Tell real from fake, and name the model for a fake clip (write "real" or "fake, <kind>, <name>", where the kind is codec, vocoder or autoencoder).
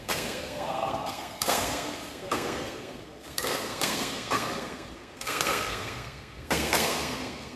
fake, codec, SNAC